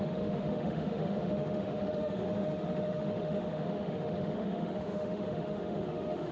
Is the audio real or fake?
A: fake